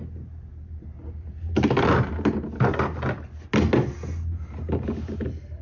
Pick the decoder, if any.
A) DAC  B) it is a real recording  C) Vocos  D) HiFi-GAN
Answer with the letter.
B